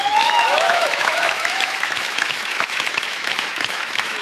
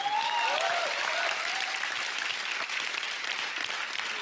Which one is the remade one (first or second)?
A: first